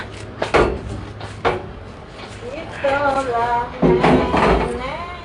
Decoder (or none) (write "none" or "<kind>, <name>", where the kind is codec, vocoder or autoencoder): none